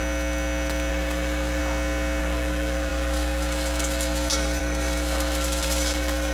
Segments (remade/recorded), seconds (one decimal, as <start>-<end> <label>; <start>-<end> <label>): 0.0-0.9 recorded; 0.9-1.6 remade; 1.6-2.2 recorded; 2.2-6.3 remade